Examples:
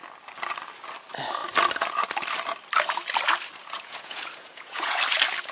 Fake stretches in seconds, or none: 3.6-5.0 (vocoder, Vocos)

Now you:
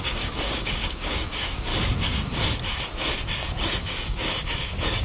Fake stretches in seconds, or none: 0.0-1.7 (codec, DAC); 3.3-5.0

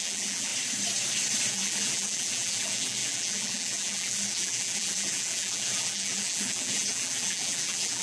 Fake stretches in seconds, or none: 0.0-0.5 (vocoder, BigVGAN v2); 1.5-8.0

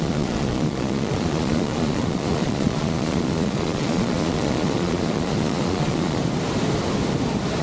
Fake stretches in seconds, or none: 0.0-6.2 (vocoder, Vocos)

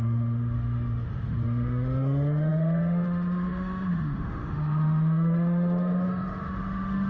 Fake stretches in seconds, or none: 0.0-7.1 (autoencoder, DAC-VAE)

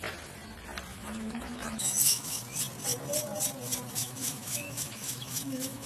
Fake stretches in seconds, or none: 0.9-2.4 (autoencoder, DAC-VAE); 4.0-5.9